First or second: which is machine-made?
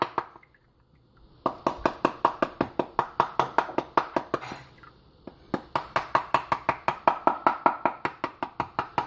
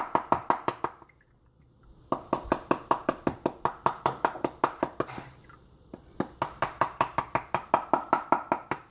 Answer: second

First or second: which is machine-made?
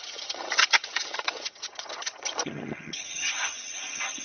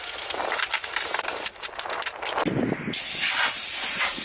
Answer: first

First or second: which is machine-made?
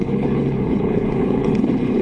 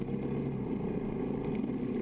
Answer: first